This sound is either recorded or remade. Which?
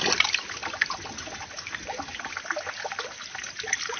recorded